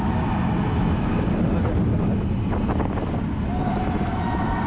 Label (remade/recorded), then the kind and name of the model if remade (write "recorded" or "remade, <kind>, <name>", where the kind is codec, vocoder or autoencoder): recorded